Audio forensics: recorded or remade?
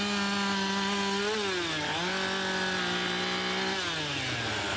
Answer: recorded